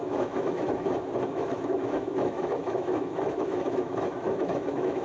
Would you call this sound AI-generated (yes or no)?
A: yes